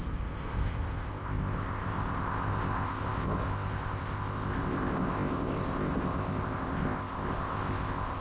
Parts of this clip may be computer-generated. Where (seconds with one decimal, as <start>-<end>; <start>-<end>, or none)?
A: 0.0-8.2